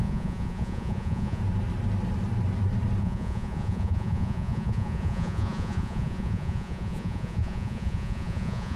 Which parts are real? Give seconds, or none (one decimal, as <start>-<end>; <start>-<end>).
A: 1.4-3.0